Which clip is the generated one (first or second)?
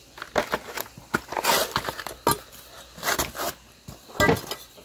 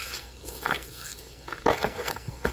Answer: second